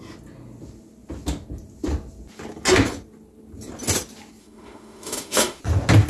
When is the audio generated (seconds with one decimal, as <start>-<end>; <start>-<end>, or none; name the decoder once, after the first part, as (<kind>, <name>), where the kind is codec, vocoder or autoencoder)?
4.4-5.6 (autoencoder, DAC-VAE)